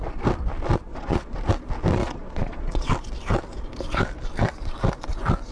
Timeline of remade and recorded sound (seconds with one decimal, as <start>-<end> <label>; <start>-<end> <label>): 0.0-0.9 recorded; 0.9-1.4 remade; 1.4-2.0 recorded; 2.0-2.9 remade; 2.9-5.5 recorded